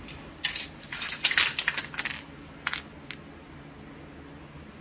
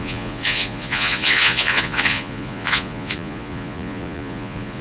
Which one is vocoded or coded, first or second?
second